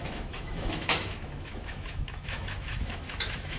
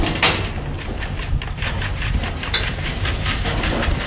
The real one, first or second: second